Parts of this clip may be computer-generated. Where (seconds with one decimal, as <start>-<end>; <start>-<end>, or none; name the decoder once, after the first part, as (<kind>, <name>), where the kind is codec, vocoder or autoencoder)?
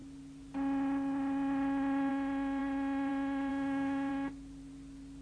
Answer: 3.5-4.1 (autoencoder, DAC-VAE)